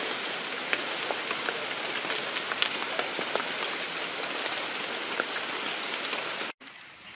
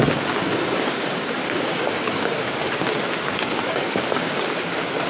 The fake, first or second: second